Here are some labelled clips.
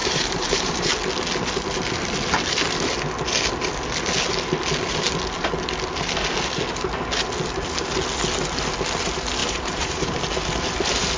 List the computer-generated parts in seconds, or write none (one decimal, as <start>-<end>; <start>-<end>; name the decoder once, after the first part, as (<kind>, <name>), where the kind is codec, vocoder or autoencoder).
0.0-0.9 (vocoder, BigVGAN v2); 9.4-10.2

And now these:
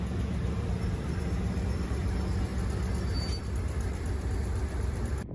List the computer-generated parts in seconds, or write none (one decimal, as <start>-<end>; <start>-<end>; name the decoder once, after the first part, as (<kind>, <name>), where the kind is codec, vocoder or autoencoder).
0.0-2.5 (vocoder, BigVGAN v2); 3.4-5.3

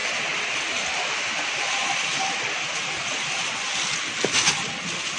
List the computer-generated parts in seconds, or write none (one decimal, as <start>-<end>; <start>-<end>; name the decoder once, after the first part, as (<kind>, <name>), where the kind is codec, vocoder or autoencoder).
none

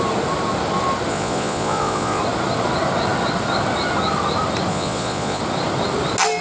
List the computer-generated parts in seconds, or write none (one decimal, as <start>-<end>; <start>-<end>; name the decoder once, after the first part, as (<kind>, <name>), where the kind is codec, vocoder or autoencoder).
1.1-2.2 (vocoder, Vocos); 4.7-5.4

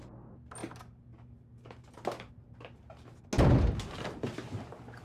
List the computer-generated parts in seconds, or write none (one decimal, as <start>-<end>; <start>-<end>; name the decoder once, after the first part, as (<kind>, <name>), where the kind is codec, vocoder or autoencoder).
none

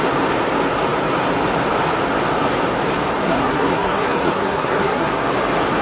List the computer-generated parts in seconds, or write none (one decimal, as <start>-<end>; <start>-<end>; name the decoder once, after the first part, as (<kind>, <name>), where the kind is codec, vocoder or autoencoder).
3.2-5.1 (codec, SNAC)

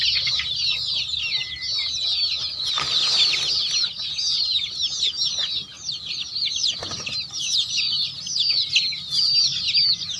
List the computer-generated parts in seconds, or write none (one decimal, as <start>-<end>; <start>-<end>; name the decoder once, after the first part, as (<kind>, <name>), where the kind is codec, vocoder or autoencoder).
5.7-8.5 (vocoder, BigVGAN v2)